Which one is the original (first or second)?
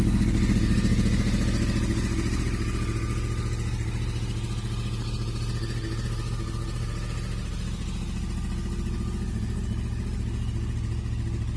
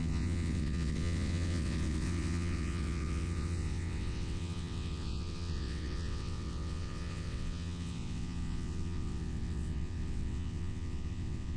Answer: first